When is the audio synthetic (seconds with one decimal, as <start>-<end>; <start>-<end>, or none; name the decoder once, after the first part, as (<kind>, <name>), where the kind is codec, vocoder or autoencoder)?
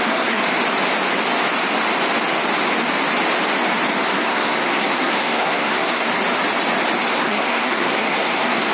0.0-0.4 (codec, SNAC); 4.1-6.1; 7.1-8.7